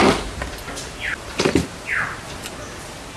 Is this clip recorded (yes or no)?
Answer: yes